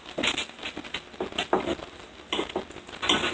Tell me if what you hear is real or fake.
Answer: real